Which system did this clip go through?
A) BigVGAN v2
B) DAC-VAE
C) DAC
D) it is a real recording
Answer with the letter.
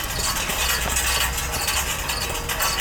D